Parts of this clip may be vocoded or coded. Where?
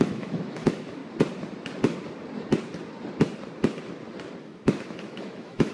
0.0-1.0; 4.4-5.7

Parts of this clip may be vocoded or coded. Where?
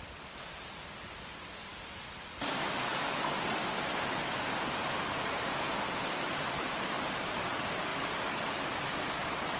none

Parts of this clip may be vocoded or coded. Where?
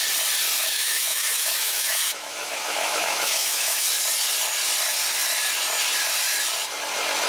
0.6-3.9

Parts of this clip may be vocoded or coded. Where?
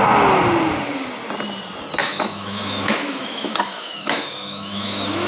2.0-5.3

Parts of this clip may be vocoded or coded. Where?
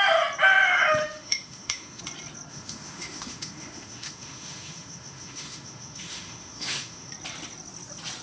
1.0-2.0; 2.5-7.1